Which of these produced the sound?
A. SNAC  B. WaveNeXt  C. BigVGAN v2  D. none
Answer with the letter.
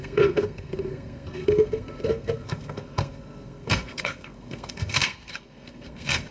A